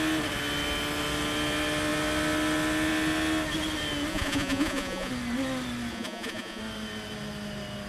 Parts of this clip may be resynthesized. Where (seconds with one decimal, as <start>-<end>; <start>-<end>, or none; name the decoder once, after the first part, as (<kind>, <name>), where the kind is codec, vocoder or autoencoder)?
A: 4.1-5.1 (vocoder, Vocos); 5.9-6.6